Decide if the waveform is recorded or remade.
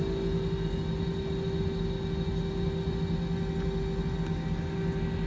recorded